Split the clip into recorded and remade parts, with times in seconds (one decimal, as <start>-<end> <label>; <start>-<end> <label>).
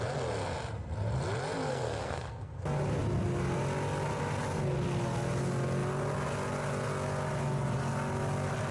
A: 0.0-1.7 recorded; 1.7-2.6 remade; 2.6-8.7 recorded